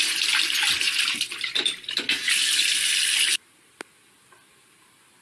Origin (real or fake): real